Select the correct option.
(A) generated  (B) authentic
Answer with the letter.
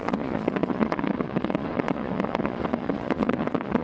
A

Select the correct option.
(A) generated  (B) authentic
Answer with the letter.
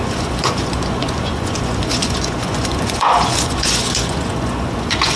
A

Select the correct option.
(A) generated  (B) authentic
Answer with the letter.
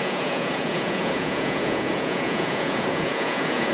A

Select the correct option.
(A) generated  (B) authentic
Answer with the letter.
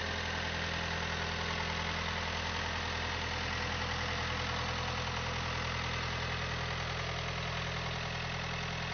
B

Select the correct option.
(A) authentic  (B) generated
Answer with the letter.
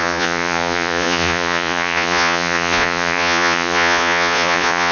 B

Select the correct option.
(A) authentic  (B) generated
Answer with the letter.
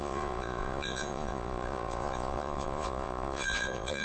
B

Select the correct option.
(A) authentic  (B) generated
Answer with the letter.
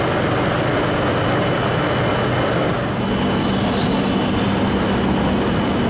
A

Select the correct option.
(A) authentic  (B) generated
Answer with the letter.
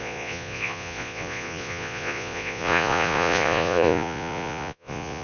B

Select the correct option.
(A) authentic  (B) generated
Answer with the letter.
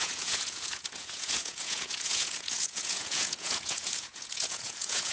B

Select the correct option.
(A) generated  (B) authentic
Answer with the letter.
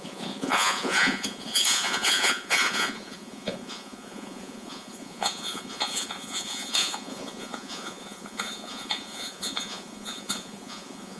A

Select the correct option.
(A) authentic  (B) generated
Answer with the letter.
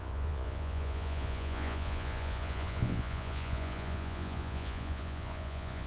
B